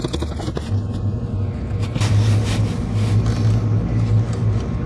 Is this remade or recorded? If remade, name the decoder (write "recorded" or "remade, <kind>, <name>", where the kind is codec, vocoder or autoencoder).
recorded